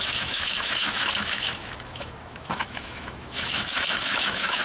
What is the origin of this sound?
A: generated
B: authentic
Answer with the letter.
A